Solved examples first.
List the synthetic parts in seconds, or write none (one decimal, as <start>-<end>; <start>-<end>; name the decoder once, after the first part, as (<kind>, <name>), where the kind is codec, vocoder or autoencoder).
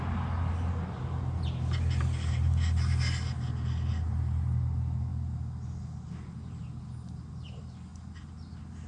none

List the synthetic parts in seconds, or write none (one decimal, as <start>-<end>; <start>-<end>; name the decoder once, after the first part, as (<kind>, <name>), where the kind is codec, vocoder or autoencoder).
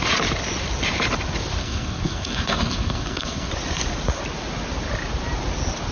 1.6-3.5 (codec, SNAC)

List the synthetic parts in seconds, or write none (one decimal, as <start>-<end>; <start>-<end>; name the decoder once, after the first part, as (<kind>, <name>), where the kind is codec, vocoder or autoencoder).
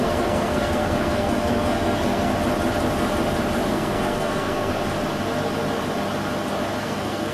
0.0-2.3 (codec, SNAC); 3.7-4.7; 6.8-7.3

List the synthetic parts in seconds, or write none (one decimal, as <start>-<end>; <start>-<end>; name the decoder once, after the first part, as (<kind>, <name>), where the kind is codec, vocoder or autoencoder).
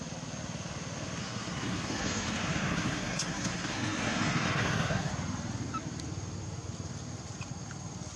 1.2-5.1 (codec, SNAC)